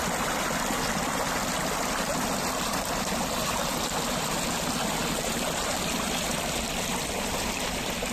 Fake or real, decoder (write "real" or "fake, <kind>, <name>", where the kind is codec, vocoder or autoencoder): real